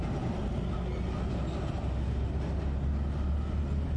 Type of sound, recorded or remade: recorded